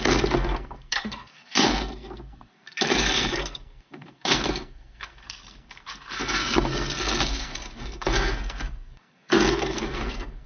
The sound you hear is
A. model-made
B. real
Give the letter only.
A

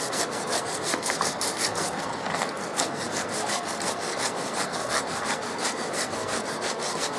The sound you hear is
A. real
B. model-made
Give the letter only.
B